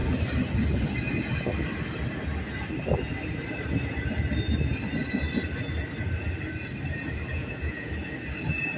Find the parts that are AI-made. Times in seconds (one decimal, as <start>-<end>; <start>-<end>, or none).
7.3-7.9